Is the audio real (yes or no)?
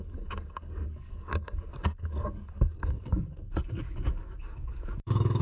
no